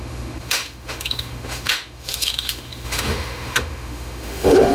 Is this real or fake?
fake